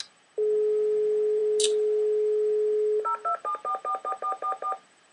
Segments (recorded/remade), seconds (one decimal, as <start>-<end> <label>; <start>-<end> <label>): 0.0-5.1 recorded